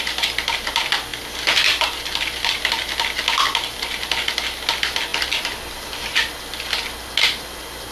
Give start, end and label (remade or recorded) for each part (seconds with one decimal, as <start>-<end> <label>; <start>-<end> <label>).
0.0-7.9 recorded